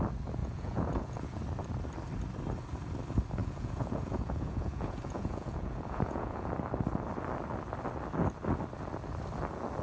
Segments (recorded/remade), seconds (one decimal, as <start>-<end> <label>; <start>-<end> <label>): 0.0-0.4 recorded; 0.4-1.4 remade; 1.4-3.4 recorded; 3.4-6.5 remade; 6.5-9.8 recorded